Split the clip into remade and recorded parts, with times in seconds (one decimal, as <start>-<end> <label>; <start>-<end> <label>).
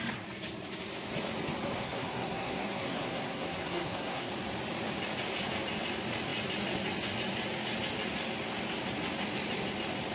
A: 0.0-1.8 recorded; 1.8-4.3 remade; 4.3-10.1 recorded